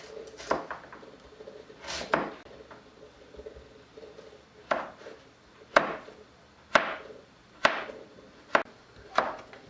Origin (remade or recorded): recorded